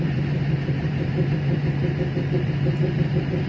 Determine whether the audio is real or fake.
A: fake